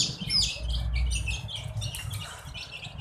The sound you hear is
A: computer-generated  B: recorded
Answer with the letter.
B